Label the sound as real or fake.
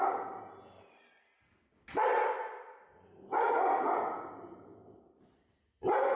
real